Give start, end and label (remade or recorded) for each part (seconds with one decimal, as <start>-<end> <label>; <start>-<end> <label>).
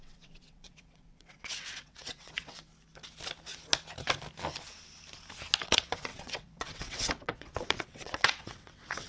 0.0-2.7 remade; 2.7-5.6 recorded; 5.6-9.1 remade